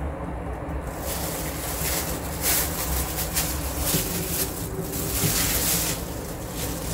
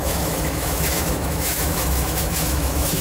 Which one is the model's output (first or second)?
second